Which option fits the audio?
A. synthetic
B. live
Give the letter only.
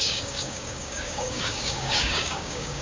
A